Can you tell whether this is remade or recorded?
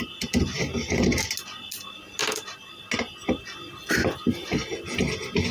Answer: recorded